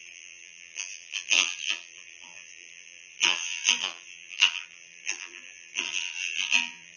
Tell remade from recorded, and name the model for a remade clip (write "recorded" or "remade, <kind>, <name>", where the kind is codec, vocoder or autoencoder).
remade, vocoder, BigVGAN v2